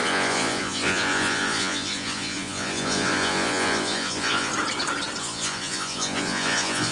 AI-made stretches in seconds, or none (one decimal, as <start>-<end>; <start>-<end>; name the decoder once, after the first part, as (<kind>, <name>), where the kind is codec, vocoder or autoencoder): 0.0-4.5 (vocoder, Vocos); 5.2-6.9